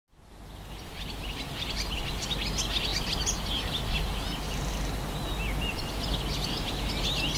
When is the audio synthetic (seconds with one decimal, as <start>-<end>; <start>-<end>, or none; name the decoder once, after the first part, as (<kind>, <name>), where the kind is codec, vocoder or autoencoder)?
none